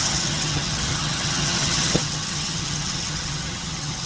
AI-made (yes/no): yes